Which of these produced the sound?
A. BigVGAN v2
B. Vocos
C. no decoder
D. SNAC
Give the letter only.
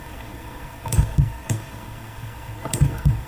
D